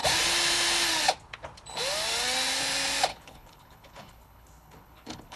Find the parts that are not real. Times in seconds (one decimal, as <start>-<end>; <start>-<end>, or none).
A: 3.1-5.4